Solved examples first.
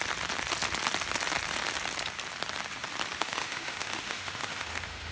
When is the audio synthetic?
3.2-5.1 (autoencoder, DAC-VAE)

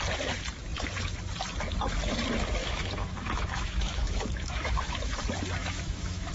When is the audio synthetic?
2.6-5.1 (autoencoder, DAC-VAE); 5.6-6.3

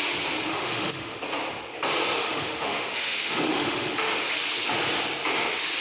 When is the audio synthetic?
0.5-1.2 (autoencoder, DAC-VAE); 2.2-4.1

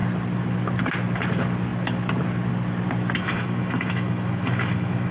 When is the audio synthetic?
3.2-5.1 (autoencoder, DAC-VAE)

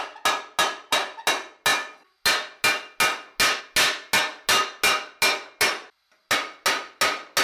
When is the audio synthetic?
none

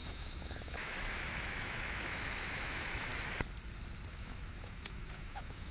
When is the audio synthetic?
0.0-3.1 (autoencoder, DAC-VAE); 4.1-5.7